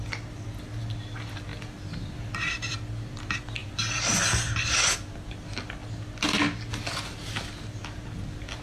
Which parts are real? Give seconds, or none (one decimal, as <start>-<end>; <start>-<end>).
0.0-8.6